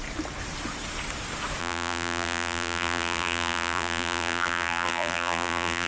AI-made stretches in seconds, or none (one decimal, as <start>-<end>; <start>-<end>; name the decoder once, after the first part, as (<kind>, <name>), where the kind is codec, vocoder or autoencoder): 1.6-5.9 (vocoder, BigVGAN v2)